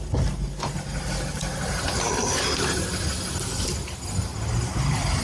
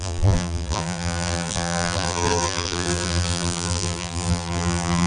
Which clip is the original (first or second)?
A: first